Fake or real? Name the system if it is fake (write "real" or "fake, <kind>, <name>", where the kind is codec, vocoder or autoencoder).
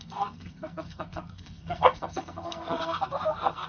fake, codec, SNAC